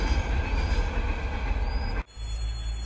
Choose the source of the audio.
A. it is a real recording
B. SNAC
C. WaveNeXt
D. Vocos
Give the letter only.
A